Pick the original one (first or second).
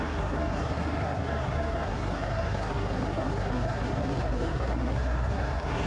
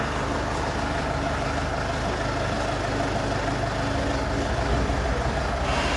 second